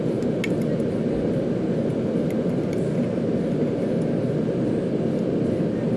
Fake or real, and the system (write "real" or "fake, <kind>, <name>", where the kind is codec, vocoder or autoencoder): real